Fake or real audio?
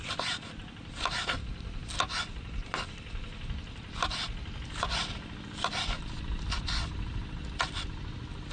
real